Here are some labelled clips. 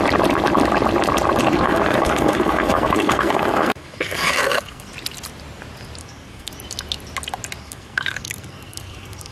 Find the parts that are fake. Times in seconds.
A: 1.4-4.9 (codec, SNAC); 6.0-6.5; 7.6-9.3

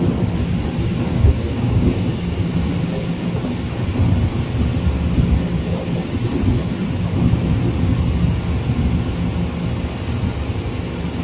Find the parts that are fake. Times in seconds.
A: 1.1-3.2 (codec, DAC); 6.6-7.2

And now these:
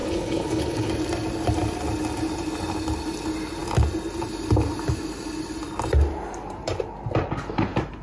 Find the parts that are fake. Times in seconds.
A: 0.0-0.9 (codec, HILCodec)

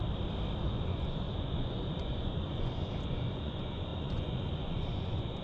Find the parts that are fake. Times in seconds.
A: 0.6-5.4 (vocoder, Vocos)